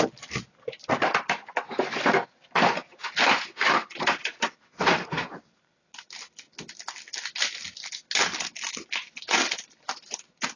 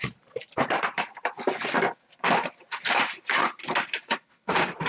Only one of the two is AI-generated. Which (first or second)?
second